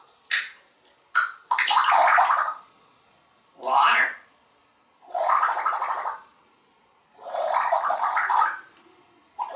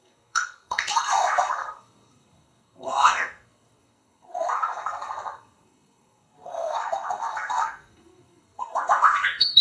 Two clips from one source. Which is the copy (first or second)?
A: second